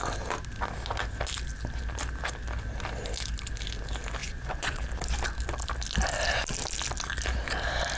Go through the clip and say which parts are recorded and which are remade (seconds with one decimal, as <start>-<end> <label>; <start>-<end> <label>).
0.0-4.2 recorded; 4.2-4.8 remade; 4.8-8.0 recorded